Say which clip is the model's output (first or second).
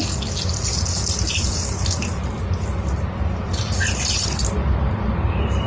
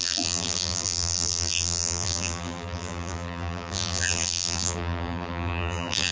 second